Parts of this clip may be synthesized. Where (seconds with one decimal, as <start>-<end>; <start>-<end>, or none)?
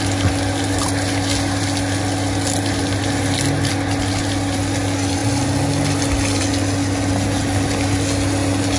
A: none